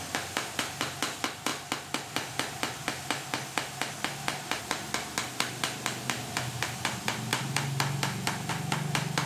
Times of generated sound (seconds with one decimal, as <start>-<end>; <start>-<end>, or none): none